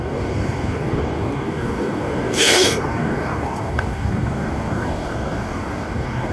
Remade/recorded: remade